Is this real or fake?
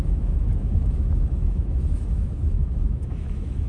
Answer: fake